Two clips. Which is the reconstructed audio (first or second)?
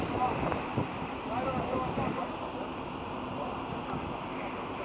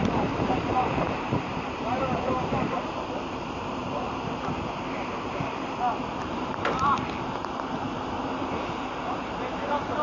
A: second